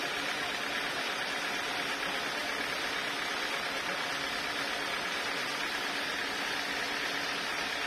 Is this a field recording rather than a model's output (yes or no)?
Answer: yes